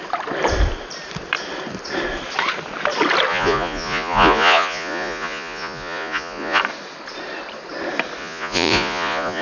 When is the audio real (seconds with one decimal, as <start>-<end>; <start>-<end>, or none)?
0.0-3.3; 6.6-8.2

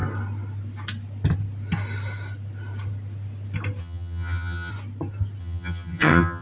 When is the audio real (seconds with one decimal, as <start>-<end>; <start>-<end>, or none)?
0.0-3.8; 4.7-5.4

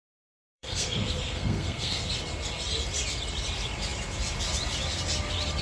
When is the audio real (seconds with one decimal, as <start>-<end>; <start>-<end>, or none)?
0.0-0.4; 2.1-5.6

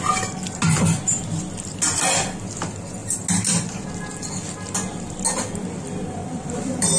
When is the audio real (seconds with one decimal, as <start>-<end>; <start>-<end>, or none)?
0.0-6.2

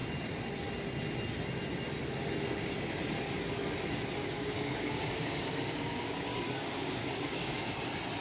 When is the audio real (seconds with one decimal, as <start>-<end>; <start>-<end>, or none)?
0.0-4.2; 7.7-8.2

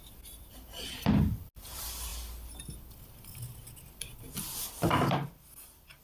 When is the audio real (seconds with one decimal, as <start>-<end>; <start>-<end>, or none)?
0.0-6.0